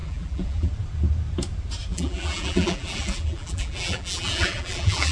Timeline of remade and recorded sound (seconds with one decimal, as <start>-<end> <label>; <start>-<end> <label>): 0.0-0.7 remade; 0.7-1.9 recorded; 1.9-5.1 remade